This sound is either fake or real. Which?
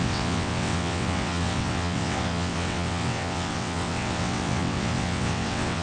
fake